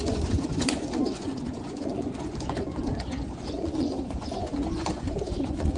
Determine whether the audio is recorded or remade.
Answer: remade